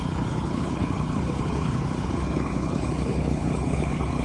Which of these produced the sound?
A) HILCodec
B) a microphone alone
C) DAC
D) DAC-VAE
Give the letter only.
A